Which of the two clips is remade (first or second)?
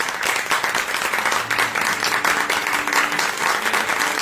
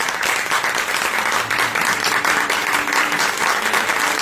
second